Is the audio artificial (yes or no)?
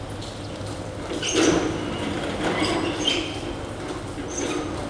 no